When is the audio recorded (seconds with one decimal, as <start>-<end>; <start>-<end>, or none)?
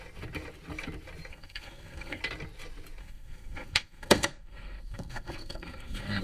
0.0-1.3; 2.2-3.0